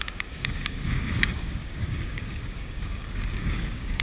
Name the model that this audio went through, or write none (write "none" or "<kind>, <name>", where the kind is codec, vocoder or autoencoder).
codec, DAC